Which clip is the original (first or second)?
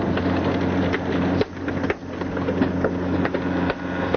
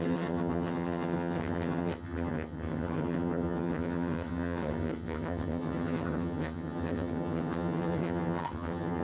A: first